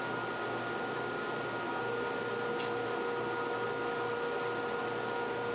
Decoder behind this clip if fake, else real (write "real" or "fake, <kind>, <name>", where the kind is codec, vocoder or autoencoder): real